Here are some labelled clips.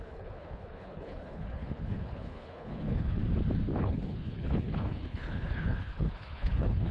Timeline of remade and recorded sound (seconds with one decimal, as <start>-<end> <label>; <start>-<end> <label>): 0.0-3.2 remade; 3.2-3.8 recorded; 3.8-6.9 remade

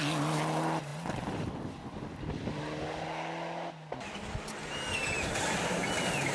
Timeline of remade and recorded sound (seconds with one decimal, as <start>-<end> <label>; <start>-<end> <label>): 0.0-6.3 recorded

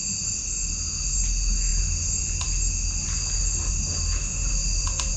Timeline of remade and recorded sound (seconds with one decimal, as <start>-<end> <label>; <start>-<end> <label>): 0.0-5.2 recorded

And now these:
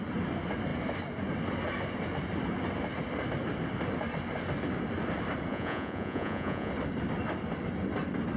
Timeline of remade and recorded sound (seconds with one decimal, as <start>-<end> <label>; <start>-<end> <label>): 0.0-5.5 recorded; 5.5-6.7 remade; 6.7-8.4 recorded

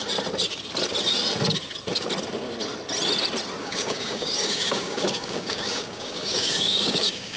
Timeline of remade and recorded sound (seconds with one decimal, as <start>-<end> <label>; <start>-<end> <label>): 0.0-3.6 recorded; 3.6-7.4 remade